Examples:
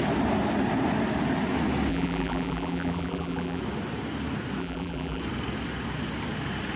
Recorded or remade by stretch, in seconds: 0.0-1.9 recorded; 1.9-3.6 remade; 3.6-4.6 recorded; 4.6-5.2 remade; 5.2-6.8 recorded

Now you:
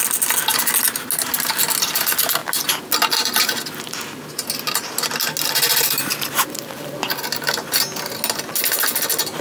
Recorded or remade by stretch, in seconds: 0.0-9.4 recorded

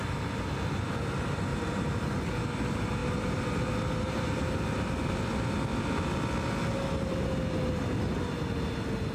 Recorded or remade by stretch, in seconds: 0.0-1.5 recorded; 1.5-2.3 remade; 2.3-3.0 recorded; 3.0-5.1 remade; 5.1-9.1 recorded